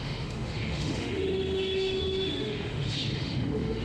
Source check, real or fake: fake